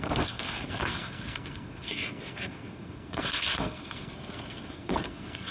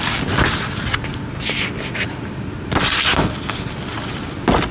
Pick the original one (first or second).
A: second